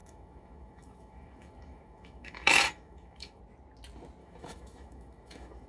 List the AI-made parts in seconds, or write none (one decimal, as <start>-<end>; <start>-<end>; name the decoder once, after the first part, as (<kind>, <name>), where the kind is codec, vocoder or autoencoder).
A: 0.0-3.4 (autoencoder, DAC-VAE); 4.2-5.7